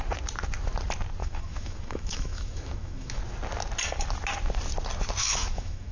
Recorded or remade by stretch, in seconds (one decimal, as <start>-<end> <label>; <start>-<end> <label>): 0.0-1.2 recorded; 1.2-3.2 remade; 3.2-5.2 recorded; 5.2-5.9 remade